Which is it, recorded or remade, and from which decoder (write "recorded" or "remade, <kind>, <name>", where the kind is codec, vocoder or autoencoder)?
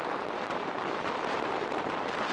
remade, vocoder, BigVGAN v2